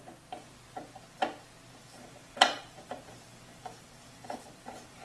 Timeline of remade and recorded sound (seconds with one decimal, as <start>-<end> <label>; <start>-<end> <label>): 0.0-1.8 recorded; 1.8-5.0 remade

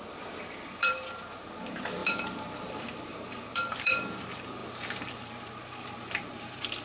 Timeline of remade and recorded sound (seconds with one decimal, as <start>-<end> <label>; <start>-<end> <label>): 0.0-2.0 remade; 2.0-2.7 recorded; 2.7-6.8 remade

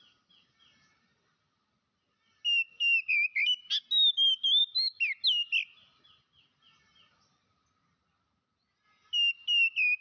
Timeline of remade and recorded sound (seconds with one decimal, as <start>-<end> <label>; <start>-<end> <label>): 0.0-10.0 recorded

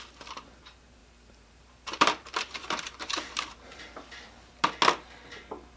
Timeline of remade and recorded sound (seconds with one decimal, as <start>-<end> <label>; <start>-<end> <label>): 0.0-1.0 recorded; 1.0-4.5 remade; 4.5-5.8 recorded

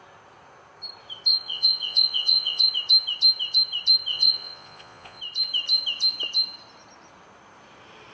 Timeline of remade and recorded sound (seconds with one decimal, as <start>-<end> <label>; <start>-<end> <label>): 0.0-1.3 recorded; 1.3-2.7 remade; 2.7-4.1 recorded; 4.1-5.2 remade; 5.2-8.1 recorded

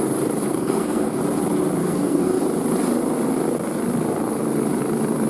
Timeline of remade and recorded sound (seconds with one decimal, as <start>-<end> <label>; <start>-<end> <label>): 0.0-0.4 recorded; 0.4-1.2 remade; 1.2-1.8 recorded; 1.8-2.4 remade; 2.4-5.3 recorded

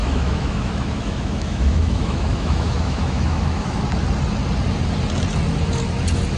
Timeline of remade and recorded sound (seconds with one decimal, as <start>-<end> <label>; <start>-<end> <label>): 0.0-3.8 remade; 3.8-6.4 recorded

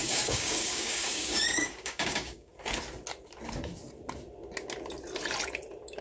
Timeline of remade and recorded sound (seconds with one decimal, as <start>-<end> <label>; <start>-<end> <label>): 0.0-2.5 remade; 2.5-6.0 recorded